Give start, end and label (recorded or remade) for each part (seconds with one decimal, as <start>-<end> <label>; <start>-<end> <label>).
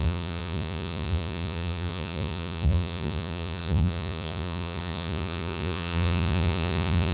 0.0-7.1 remade